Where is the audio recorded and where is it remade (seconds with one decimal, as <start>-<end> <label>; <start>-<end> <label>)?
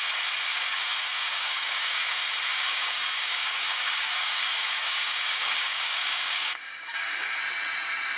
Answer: 0.0-0.5 recorded; 0.5-2.1 remade; 2.1-2.5 recorded; 2.5-7.4 remade; 7.4-8.2 recorded